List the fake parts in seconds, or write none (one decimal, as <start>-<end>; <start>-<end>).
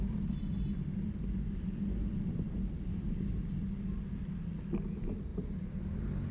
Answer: none